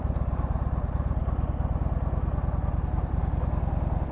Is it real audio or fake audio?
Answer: real